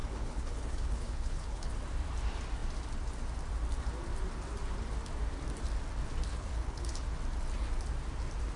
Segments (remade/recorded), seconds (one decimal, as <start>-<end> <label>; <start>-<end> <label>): 0.0-1.7 remade; 1.7-6.3 recorded; 6.3-7.0 remade; 7.0-8.6 recorded

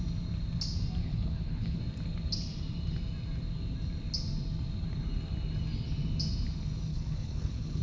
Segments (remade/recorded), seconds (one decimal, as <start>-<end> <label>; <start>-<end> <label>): 0.0-1.0 recorded; 1.0-1.8 remade; 1.8-6.9 recorded; 6.9-7.8 remade

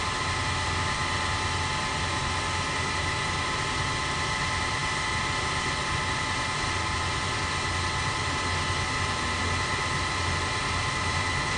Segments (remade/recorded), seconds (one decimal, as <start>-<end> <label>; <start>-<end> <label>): 0.0-11.6 recorded

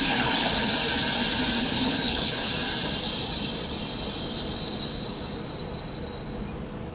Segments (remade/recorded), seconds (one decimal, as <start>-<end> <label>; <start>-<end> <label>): 0.0-0.7 remade; 0.7-1.6 recorded; 1.6-2.5 remade; 2.5-6.9 recorded

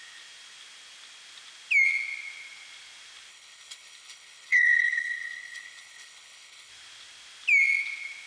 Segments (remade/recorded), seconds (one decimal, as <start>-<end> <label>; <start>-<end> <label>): 0.0-3.3 recorded; 3.3-6.7 remade; 6.7-8.3 recorded